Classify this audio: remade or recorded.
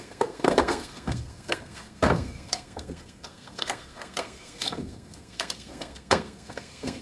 remade